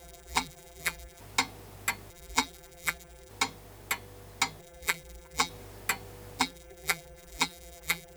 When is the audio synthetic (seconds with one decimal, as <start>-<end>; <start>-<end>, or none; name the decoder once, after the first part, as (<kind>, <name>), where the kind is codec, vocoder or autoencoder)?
0.0-1.2 (vocoder, BigVGAN v2); 2.1-3.3; 4.6-5.5; 6.4-8.2